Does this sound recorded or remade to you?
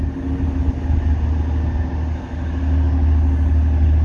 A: recorded